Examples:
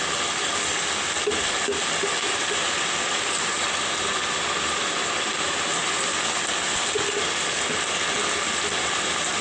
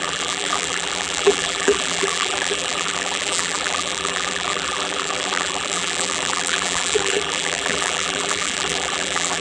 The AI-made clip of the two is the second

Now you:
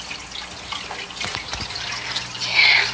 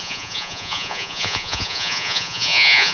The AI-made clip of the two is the second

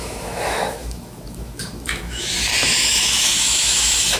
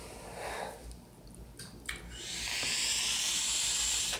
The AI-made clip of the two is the first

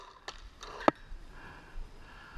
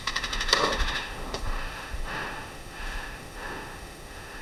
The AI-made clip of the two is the second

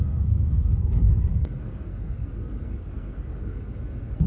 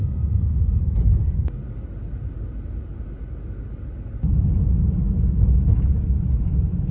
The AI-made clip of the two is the first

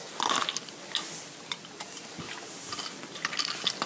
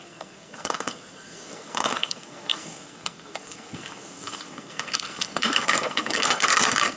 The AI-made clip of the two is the second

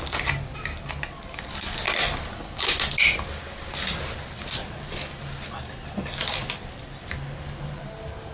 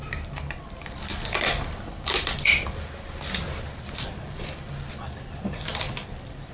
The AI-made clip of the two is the second